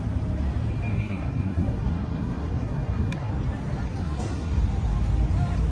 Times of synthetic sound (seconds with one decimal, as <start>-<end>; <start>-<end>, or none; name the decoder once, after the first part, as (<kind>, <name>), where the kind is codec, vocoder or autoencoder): 0.9-3.3 (codec, SNAC); 4.0-4.6